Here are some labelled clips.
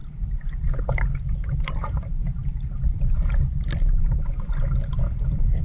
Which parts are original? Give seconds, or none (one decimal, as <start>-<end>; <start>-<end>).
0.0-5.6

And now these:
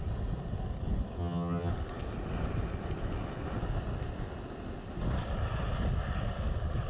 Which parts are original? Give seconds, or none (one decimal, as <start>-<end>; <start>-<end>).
0.0-1.2; 1.7-6.9

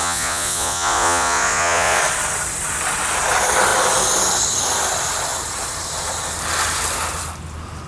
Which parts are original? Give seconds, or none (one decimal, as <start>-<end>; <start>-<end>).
2.0-7.9

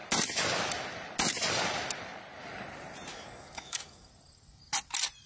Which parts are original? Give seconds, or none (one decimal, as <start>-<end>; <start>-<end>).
0.0-3.1; 4.1-5.3

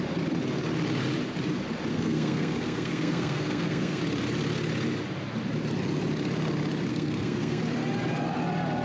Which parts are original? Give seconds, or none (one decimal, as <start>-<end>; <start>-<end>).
0.0-1.9; 4.0-6.9; 7.6-8.8

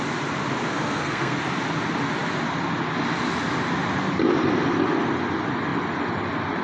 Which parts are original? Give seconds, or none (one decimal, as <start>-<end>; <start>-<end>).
0.0-0.7; 1.4-6.6

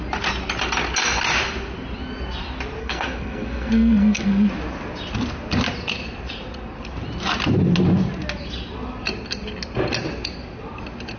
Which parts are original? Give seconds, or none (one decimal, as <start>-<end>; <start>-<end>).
0.0-2.8; 4.5-11.2

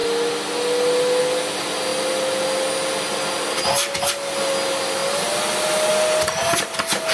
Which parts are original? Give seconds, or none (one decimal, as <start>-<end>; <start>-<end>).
0.0-7.1